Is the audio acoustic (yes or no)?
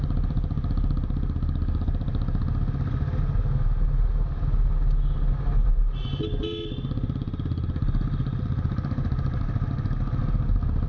yes